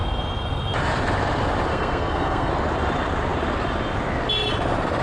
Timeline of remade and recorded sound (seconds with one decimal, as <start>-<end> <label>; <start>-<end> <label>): 0.0-1.7 recorded; 1.7-2.5 remade; 2.5-5.0 recorded